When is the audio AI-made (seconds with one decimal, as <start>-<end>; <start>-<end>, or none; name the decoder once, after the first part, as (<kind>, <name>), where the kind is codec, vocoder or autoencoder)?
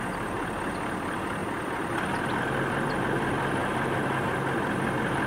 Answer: 3.6-4.3 (vocoder, BigVGAN v2)